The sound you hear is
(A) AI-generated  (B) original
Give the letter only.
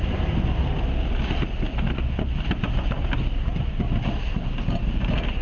B